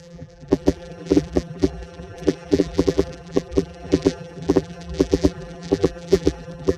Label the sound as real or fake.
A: fake